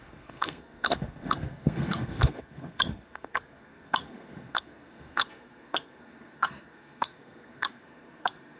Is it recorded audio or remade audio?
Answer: remade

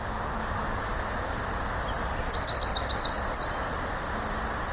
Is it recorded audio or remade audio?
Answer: recorded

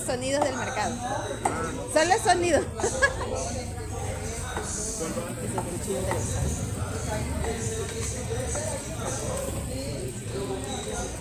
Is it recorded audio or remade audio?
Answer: recorded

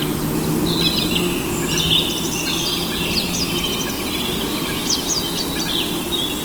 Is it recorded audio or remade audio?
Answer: recorded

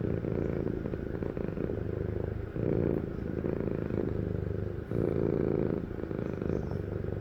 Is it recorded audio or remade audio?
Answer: recorded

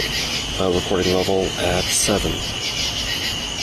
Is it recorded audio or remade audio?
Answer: recorded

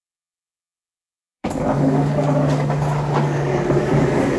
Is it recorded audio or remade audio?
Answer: remade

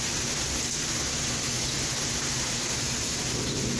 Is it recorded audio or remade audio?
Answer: recorded